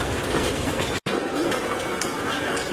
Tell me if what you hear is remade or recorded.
remade